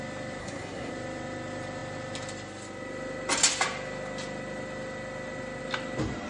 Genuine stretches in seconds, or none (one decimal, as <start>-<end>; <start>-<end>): 0.0-0.4; 0.9-6.3